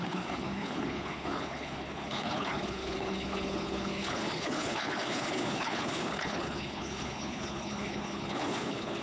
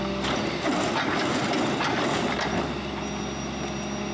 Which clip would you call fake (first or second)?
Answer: first